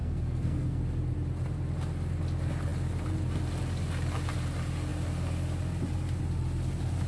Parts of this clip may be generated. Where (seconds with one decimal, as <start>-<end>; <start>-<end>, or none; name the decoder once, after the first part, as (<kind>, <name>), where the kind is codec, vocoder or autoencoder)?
0.0-0.8 (codec, SNAC)

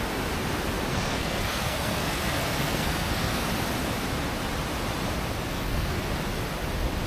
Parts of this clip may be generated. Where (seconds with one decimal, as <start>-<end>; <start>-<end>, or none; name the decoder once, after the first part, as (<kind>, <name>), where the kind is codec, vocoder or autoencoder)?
0.9-3.5 (codec, SNAC); 5.5-6.0

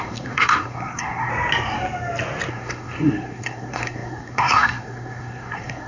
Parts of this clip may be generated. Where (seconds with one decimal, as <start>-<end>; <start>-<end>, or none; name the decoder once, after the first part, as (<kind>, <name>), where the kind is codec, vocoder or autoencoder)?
0.0-1.3 (codec, SNAC); 2.5-5.9

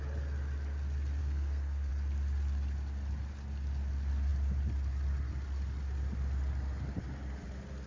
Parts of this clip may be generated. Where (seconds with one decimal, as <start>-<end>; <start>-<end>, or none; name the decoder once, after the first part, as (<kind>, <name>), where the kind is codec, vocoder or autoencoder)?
1.2-1.9 (codec, SNAC)

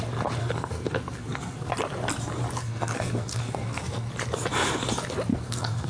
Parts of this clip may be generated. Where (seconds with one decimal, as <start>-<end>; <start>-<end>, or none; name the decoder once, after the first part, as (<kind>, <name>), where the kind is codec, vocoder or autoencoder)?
0.4-1.7 (codec, SNAC); 2.6-4.1; 5.3-5.9

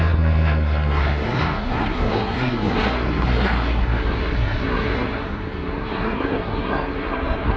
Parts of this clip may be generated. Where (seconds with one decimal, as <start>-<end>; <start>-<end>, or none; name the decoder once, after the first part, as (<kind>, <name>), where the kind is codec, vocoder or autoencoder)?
0.0-7.6 (codec, SNAC)